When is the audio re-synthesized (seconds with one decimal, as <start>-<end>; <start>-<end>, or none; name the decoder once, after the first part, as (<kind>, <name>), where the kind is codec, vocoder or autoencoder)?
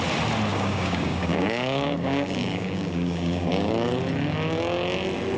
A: 0.5-3.7 (codec, DAC)